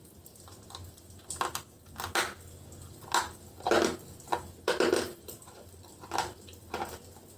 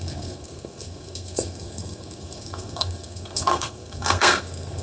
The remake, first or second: second